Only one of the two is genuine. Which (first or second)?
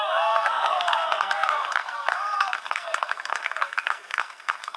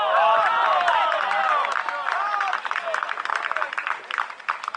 second